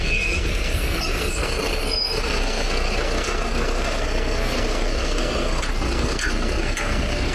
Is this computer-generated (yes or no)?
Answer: yes